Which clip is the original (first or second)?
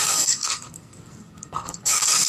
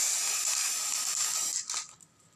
second